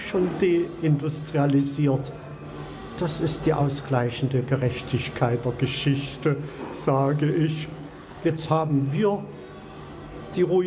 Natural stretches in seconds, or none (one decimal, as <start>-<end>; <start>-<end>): 0.0-7.7; 8.7-10.7